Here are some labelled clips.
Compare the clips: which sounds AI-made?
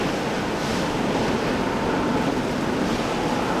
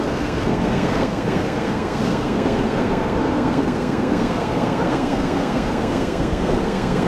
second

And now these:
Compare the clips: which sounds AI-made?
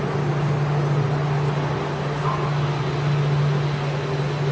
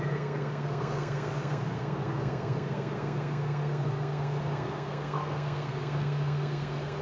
second